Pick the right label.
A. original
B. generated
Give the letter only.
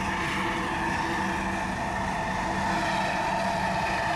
A